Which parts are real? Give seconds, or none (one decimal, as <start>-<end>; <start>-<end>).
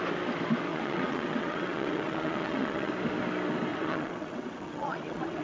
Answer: 0.0-0.7; 2.9-3.7